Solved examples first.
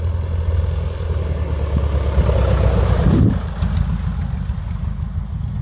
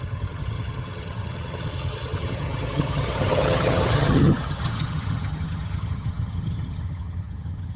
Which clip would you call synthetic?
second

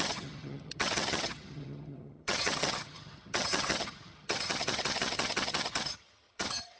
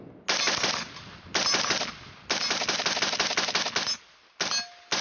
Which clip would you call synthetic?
first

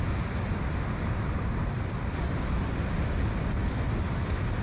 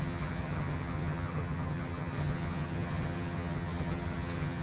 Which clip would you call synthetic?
second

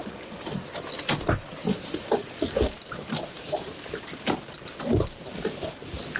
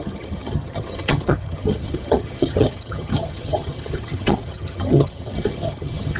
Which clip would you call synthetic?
second